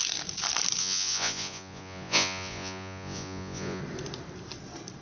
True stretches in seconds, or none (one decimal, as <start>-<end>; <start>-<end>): 0.0-0.8; 3.8-5.0